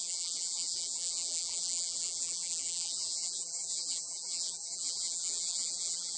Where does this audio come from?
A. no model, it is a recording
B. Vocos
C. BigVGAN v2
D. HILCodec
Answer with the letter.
C